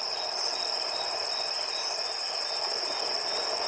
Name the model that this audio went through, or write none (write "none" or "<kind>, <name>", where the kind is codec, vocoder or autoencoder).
none